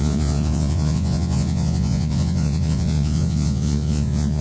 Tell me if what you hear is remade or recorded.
remade